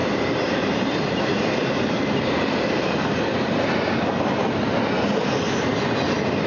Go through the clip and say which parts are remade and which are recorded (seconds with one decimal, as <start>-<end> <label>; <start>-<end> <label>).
0.0-3.9 remade; 3.9-6.5 recorded

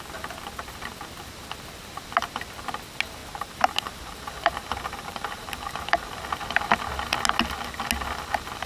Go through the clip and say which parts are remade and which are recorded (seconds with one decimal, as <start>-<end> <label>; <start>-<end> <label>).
0.0-3.2 recorded; 3.2-6.3 remade; 6.3-8.7 recorded

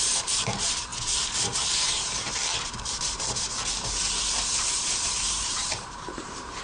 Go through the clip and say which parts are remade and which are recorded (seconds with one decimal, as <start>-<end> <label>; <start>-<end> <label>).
0.0-0.9 remade; 0.9-4.6 recorded; 4.6-6.6 remade

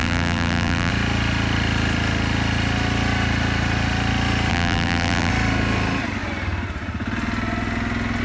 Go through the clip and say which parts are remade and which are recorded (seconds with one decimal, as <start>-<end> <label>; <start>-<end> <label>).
0.0-0.9 remade; 0.9-4.5 recorded; 4.5-5.3 remade; 5.3-8.2 recorded

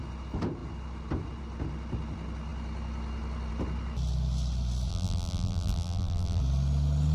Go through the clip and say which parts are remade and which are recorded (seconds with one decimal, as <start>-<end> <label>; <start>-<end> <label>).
0.0-4.9 recorded; 4.9-6.4 remade; 6.4-7.1 recorded

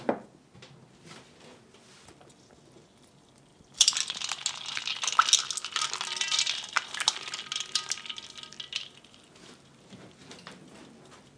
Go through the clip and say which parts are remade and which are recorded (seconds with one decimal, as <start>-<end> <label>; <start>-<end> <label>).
0.0-3.5 recorded; 3.5-4.3 remade; 4.3-11.4 recorded

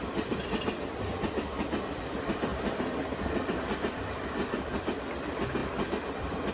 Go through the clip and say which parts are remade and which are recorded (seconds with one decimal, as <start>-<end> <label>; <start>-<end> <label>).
0.0-6.5 recorded

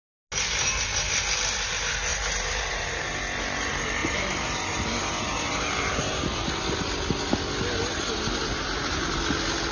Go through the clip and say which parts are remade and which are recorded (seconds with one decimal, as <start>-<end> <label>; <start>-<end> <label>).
0.0-2.1 recorded; 2.1-3.1 remade; 3.1-4.0 recorded; 4.0-6.4 remade; 6.4-9.7 recorded